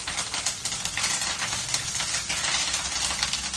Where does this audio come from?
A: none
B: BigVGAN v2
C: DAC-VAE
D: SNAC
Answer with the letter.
A